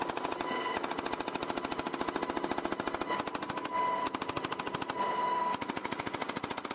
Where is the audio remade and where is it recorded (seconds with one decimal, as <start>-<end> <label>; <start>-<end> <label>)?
0.0-6.7 recorded